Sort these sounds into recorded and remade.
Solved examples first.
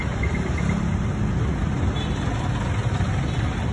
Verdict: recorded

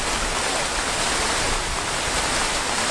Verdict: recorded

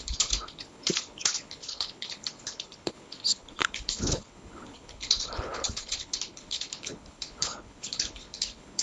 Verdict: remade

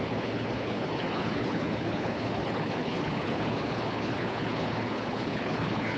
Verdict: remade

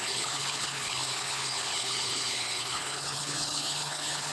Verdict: remade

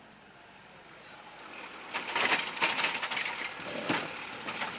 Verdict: recorded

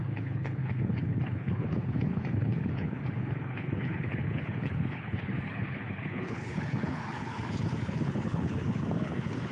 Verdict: remade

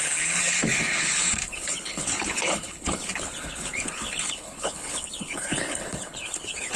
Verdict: remade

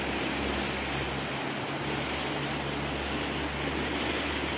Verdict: recorded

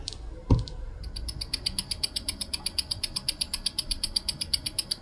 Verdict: recorded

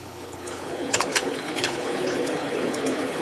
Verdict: remade